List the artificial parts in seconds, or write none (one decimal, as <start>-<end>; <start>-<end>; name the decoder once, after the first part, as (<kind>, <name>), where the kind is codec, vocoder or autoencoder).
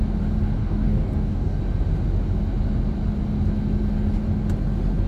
0.6-1.6 (codec, DAC)